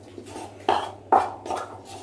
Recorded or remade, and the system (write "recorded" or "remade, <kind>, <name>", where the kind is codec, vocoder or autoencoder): recorded